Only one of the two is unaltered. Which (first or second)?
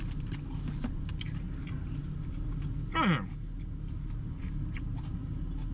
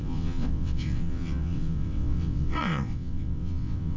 first